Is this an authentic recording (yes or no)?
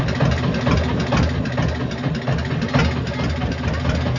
yes